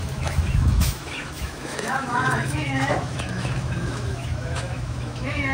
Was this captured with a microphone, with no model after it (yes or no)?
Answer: no